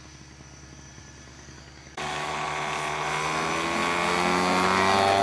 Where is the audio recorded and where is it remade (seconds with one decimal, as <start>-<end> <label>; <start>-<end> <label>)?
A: 0.0-1.3 recorded; 1.3-2.3 remade; 2.3-5.2 recorded